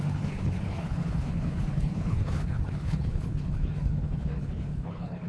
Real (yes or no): no